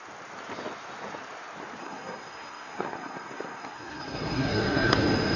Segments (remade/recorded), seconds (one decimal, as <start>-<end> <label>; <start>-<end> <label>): 0.0-1.8 recorded; 1.8-5.0 remade; 5.0-5.4 recorded